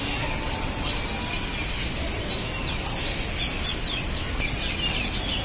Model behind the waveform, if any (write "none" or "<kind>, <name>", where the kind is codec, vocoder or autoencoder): none